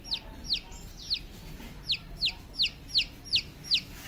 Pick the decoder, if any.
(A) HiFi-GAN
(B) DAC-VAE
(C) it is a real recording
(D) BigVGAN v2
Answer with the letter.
C